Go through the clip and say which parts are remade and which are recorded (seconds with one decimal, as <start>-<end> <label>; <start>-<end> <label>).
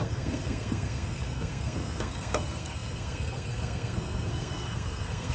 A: 0.0-5.3 remade